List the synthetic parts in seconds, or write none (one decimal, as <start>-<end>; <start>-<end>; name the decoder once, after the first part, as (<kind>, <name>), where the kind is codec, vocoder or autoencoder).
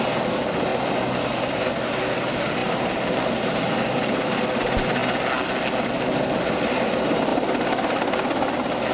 none